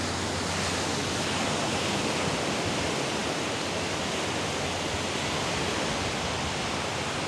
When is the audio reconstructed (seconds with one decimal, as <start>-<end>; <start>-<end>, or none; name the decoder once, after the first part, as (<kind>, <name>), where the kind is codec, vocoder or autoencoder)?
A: 1.0-1.6 (codec, DAC)